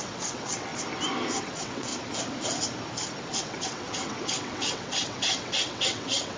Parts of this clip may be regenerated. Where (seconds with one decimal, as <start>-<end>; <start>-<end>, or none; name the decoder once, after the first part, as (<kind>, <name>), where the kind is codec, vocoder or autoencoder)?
0.0-0.7 (vocoder, WaveNeXt); 1.4-1.9; 3.4-6.4